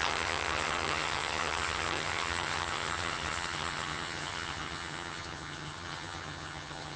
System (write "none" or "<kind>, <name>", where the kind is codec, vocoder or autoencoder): vocoder, HiFi-GAN